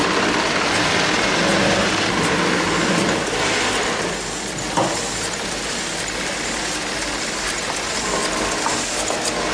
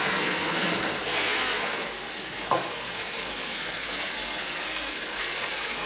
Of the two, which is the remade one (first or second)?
second